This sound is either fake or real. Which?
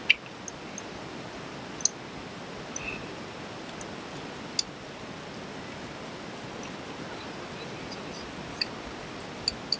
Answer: real